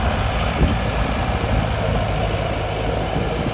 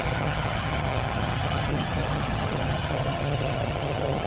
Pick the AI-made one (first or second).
second